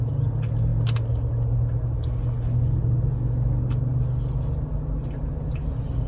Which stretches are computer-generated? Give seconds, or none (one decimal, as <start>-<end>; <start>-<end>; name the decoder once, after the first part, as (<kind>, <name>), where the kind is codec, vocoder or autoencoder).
none